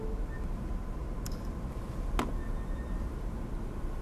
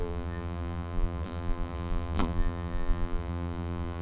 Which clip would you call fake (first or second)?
second